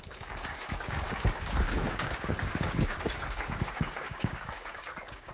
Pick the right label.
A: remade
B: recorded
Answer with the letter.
A